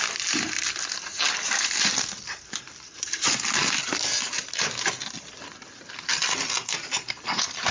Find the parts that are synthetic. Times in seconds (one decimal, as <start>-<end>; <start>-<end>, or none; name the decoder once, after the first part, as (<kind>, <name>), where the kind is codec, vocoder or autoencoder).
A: 1.1-4.9 (vocoder, BigVGAN v2); 6.6-7.7